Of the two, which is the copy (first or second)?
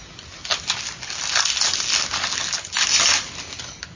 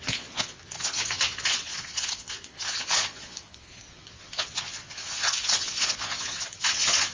second